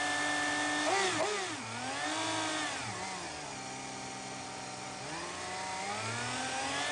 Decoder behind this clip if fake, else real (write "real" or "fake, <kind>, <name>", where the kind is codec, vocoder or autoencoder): real